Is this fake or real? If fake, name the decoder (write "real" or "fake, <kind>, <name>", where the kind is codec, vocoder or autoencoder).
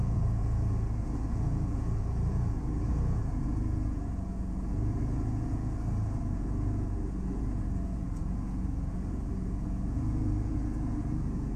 fake, vocoder, Vocos